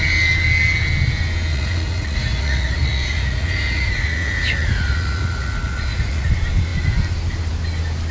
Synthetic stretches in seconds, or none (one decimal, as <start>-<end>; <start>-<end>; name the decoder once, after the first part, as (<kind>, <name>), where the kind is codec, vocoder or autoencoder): 1.5-6.3 (vocoder, Vocos)